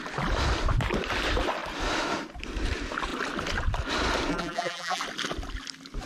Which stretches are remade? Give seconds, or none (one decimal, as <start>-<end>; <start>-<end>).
4.3-5.0